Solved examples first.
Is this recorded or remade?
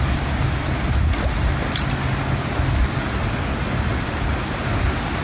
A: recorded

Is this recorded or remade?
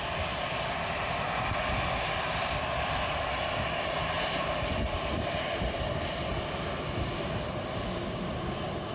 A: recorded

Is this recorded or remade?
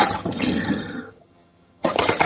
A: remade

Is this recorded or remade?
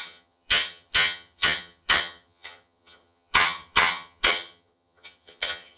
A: remade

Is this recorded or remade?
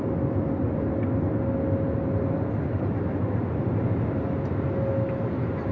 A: recorded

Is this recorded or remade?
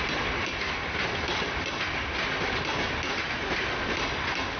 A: recorded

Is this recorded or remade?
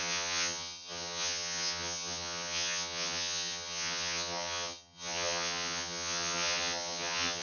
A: remade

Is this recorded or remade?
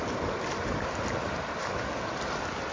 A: recorded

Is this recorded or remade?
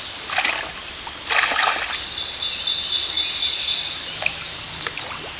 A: recorded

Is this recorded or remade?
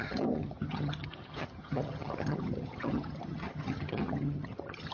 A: remade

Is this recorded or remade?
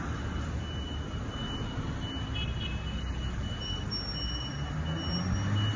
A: recorded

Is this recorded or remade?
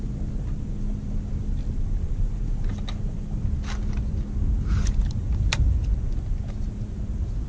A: recorded